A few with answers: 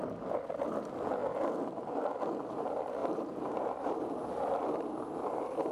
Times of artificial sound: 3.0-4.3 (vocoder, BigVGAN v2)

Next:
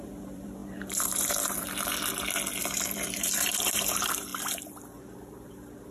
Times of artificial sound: 0.0-1.9 (vocoder, BigVGAN v2); 2.6-5.9

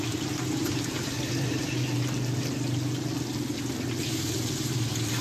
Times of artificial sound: 0.0-1.6 (vocoder, BigVGAN v2); 4.7-5.2

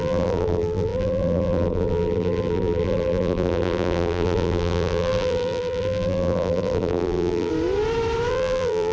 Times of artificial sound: 0.0-7.5 (vocoder, BigVGAN v2); 8.3-8.9

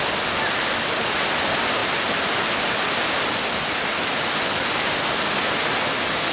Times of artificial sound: 1.8-4.9 (vocoder, BigVGAN v2)